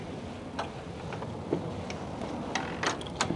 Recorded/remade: recorded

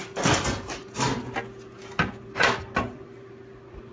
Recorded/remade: recorded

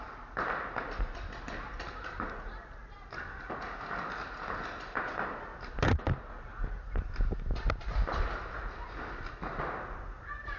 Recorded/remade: recorded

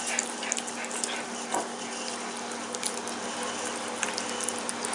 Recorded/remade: recorded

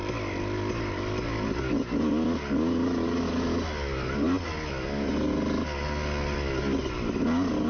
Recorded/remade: recorded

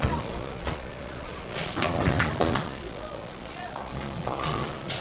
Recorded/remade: remade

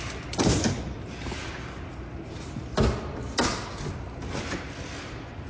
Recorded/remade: recorded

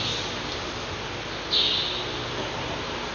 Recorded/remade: recorded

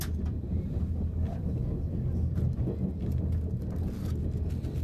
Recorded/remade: recorded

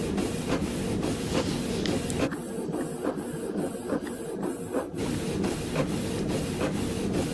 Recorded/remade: recorded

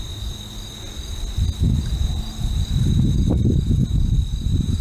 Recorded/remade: recorded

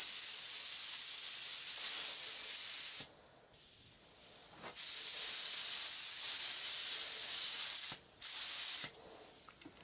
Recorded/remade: recorded